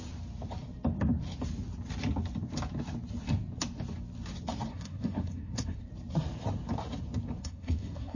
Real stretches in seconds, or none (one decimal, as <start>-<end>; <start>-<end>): 0.0-4.7; 5.9-7.4